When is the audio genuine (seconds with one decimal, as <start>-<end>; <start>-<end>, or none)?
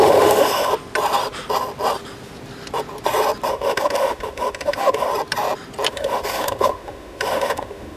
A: 0.7-3.5; 5.1-5.9